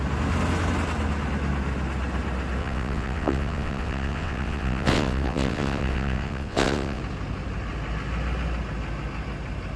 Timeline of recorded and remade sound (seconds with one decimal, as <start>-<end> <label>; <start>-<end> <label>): 0.0-2.6 recorded; 2.6-7.0 remade; 7.0-9.8 recorded